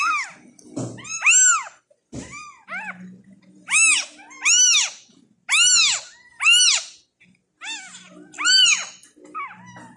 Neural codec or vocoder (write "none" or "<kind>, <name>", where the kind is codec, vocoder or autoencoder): none